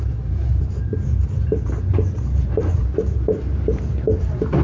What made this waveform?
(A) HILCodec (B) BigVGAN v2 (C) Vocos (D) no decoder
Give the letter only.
B